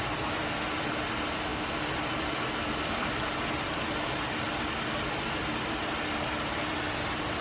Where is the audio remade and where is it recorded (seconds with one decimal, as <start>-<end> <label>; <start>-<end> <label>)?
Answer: 0.0-7.4 recorded